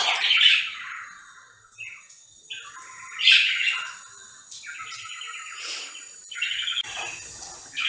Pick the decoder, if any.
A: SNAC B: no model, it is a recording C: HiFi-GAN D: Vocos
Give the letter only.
B